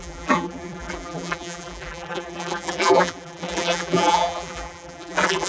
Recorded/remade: remade